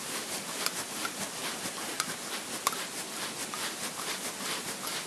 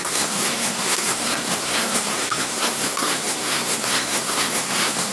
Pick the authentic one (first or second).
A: first